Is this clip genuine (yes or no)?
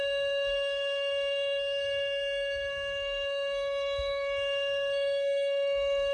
no